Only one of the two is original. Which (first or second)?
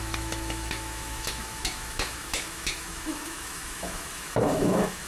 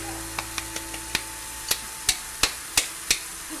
second